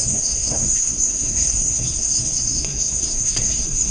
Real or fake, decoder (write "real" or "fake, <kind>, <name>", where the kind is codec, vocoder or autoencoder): fake, codec, SNAC